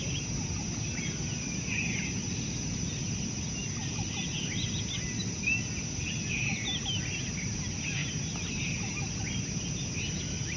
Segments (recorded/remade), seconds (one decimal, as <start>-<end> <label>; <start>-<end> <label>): 0.0-10.6 recorded